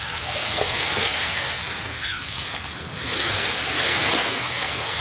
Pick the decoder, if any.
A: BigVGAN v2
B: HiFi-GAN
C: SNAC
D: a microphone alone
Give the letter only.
C